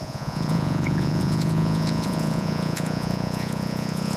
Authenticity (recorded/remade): remade